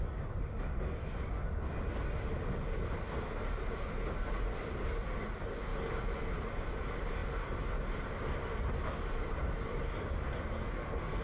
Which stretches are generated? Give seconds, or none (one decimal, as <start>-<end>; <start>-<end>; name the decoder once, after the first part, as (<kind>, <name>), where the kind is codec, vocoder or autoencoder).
10.3-11.2 (codec, SNAC)